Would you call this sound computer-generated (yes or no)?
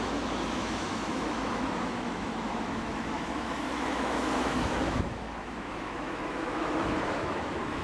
yes